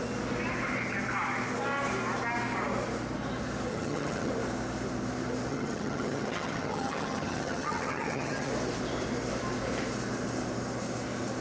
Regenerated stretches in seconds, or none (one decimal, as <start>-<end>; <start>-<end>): 3.7-4.3; 5.5-8.5